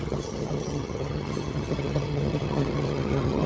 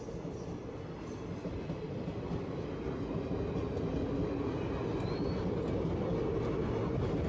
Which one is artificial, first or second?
first